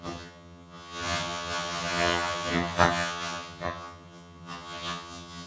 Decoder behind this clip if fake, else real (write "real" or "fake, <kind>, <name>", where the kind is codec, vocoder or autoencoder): fake, vocoder, HiFi-GAN